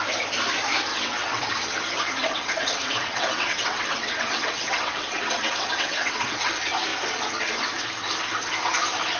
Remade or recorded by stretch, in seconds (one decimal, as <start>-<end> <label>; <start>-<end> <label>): 0.0-0.9 recorded; 0.9-1.5 remade; 1.5-2.2 recorded; 2.2-6.5 remade; 6.5-9.2 recorded